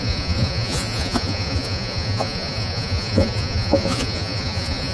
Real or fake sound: fake